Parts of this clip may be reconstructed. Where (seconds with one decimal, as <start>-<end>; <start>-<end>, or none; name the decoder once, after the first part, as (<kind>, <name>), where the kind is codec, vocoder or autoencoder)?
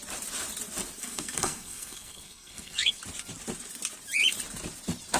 1.0-3.0 (codec, SNAC)